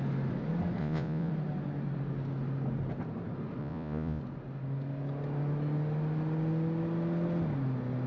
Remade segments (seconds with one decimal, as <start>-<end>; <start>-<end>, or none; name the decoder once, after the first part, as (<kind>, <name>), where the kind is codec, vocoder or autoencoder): 0.8-1.3 (vocoder, Vocos); 3.6-4.2